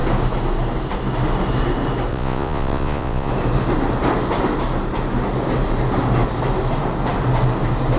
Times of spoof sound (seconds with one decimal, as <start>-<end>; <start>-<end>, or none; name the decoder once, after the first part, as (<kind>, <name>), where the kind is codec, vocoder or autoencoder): 2.1-3.3 (vocoder, Vocos)